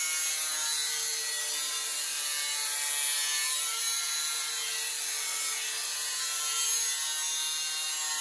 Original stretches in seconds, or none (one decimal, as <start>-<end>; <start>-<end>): 0.0-8.2